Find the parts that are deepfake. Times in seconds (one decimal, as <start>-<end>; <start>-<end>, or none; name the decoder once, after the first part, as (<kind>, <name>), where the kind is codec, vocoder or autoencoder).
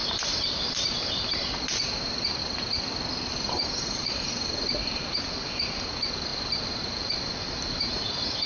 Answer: 0.0-2.4 (vocoder, BigVGAN v2); 3.3-8.5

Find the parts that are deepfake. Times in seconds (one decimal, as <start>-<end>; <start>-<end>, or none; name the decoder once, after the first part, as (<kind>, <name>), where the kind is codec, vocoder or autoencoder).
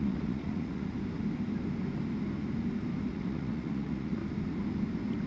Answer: 0.0-0.9 (vocoder, Vocos); 3.1-4.2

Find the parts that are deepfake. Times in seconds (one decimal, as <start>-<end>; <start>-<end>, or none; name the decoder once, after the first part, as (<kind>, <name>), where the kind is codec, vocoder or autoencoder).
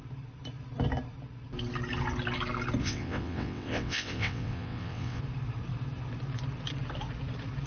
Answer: 2.8-5.2 (vocoder, WaveNeXt)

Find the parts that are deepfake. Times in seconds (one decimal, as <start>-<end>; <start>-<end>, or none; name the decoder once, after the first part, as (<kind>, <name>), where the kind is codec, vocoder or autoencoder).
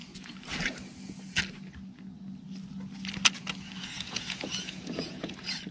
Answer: 3.8-5.3 (vocoder, Vocos)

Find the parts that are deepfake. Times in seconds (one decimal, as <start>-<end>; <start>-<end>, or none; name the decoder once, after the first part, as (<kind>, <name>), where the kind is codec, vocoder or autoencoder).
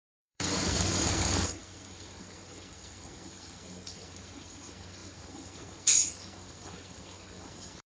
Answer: 0.0-7.9 (codec, SNAC)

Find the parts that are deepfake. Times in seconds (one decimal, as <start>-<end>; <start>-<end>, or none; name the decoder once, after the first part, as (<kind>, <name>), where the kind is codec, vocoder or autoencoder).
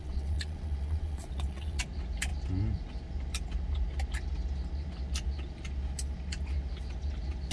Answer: 0.0-1.8 (vocoder, WaveNeXt)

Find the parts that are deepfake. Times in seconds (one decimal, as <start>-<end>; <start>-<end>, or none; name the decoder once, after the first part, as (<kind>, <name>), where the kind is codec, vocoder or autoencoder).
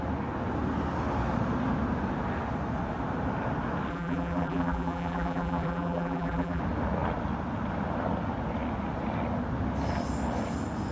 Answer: 3.9-6.6 (vocoder, BigVGAN v2)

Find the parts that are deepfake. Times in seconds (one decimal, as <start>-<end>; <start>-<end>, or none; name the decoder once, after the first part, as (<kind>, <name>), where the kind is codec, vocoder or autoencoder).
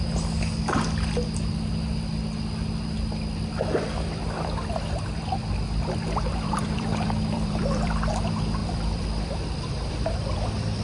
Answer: 6.3-8.1 (vocoder, BigVGAN v2); 8.6-10.8